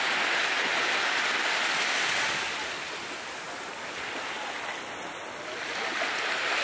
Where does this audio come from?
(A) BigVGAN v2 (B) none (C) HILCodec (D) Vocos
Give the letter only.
B